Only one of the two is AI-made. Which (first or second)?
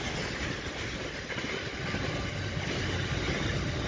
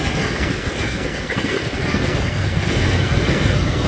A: second